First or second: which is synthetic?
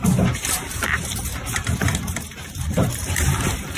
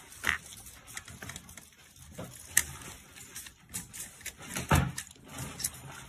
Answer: first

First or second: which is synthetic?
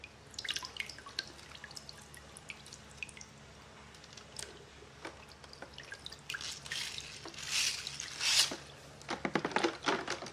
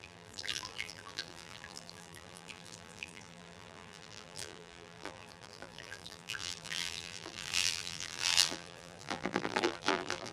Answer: second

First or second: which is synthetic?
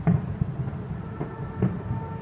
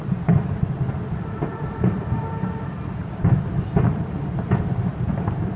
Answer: second